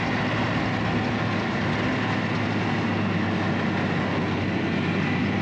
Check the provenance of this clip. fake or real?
real